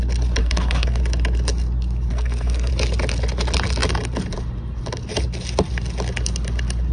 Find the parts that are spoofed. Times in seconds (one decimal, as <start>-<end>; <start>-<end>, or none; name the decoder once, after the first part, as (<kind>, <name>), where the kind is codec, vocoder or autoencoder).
0.4-1.0 (codec, SNAC); 2.1-2.7